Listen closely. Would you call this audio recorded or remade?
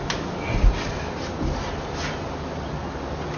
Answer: recorded